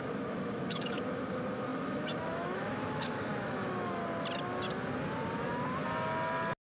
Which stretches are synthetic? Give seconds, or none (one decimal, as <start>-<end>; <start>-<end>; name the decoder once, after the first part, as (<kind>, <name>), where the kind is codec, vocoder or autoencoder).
0.0-4.0 (autoencoder, DAC-VAE)